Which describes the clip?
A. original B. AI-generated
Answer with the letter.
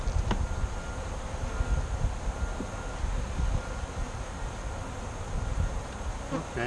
A